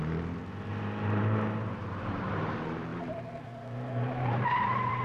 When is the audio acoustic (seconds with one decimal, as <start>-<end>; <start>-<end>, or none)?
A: 0.4-1.2